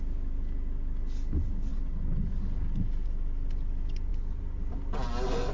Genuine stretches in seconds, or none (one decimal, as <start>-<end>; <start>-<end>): 0.0-5.5